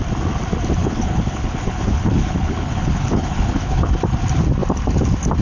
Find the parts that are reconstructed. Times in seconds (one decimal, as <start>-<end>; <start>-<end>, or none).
0.8-3.9